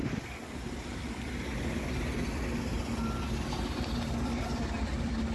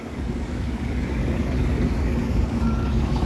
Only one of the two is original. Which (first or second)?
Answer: first